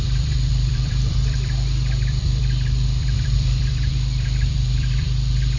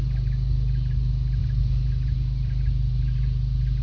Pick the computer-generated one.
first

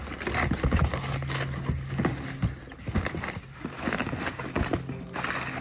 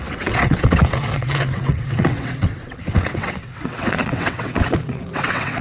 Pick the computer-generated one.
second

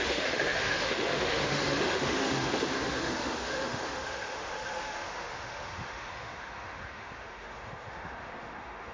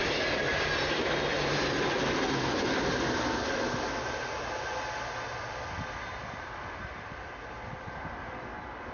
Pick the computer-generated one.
first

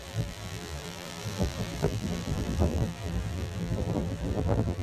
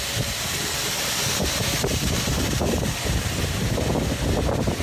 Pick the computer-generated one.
first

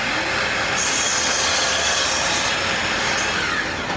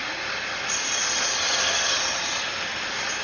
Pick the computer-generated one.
second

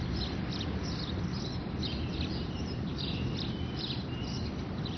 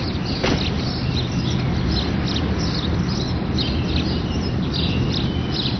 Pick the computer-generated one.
first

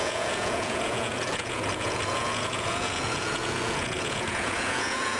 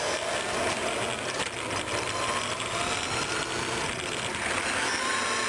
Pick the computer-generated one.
first